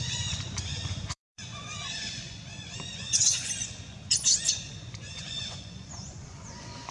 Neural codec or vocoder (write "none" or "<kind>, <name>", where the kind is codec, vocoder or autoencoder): vocoder, Vocos